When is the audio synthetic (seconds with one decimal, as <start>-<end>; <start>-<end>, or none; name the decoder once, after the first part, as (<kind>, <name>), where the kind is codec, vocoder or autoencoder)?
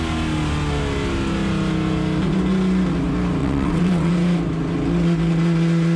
3.4-4.1 (vocoder, WaveNeXt)